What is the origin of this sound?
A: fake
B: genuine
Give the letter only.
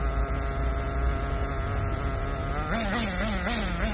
B